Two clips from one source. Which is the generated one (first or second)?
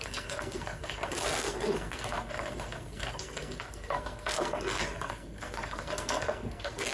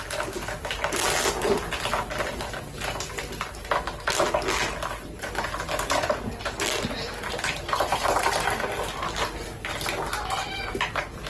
first